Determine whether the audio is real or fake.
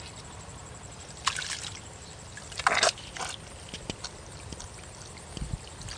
real